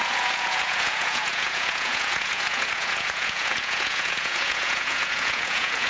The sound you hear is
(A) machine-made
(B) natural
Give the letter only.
A